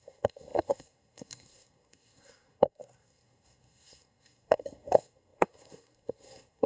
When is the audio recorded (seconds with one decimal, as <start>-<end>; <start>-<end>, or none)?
none